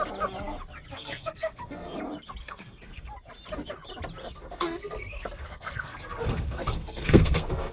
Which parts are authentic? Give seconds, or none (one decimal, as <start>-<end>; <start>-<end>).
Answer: 0.0-0.9; 2.0-2.4; 3.1-4.2